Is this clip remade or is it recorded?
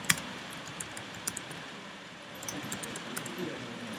remade